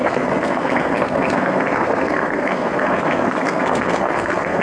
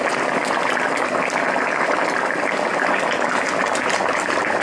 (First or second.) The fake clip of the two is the first